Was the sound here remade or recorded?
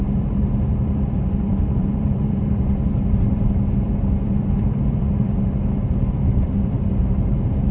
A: remade